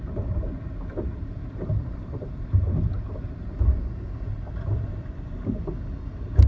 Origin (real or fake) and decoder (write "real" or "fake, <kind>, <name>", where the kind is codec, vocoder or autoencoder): real